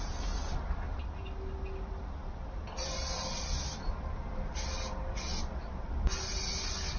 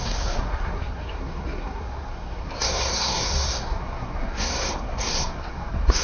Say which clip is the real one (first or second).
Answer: first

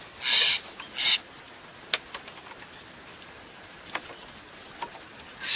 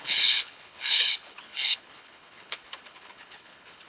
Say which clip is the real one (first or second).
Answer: first